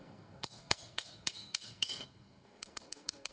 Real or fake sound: fake